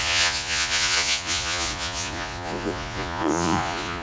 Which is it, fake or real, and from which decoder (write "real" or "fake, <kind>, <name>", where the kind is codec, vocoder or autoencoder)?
fake, vocoder, Vocos